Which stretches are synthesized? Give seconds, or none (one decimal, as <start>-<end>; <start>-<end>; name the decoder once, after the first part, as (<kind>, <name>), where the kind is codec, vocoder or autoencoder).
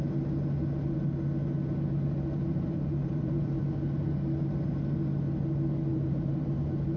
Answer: 2.5-3.6 (vocoder, BigVGAN v2); 5.9-7.0